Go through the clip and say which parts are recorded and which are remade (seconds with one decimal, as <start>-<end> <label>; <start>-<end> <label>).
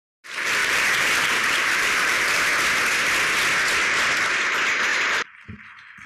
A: 0.0-0.6 recorded; 0.6-2.4 remade; 2.4-4.9 recorded; 4.9-5.4 remade; 5.4-6.1 recorded